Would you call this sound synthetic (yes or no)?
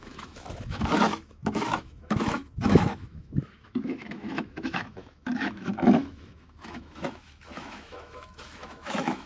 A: yes